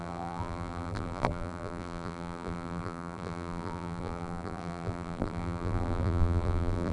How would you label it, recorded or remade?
remade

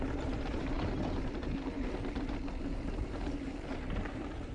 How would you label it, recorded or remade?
remade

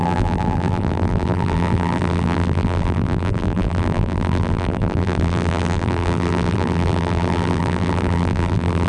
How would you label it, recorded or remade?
remade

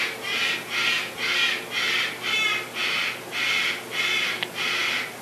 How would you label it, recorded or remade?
recorded